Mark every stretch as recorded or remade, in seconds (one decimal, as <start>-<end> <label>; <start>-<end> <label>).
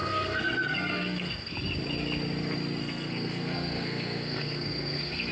0.0-1.5 remade; 1.5-2.8 recorded; 2.8-5.3 remade